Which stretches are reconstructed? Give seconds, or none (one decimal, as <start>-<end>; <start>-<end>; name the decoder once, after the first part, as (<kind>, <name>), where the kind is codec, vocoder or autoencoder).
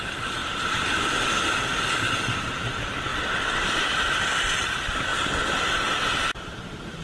0.4-1.4 (vocoder, BigVGAN v2); 3.1-4.4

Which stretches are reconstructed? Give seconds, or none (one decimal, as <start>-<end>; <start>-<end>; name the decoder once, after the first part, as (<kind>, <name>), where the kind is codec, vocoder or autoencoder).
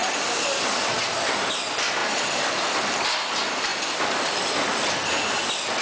2.0-2.6 (vocoder, BigVGAN v2); 3.7-5.8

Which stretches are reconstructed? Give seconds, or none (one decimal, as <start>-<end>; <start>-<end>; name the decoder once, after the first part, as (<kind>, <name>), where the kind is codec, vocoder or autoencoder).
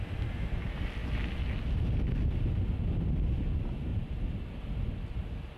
3.9-4.6 (vocoder, BigVGAN v2)